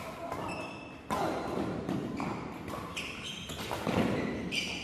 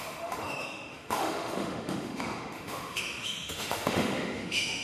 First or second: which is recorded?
first